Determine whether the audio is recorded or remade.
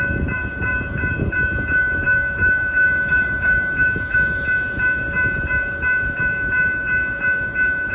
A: remade